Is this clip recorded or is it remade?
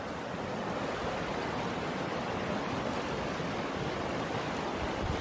recorded